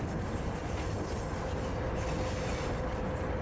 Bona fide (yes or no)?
yes